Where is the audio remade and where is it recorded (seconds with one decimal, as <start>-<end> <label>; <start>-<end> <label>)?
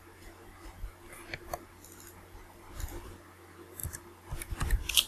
0.0-5.1 recorded